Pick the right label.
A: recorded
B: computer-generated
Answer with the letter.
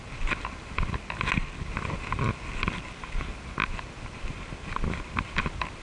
A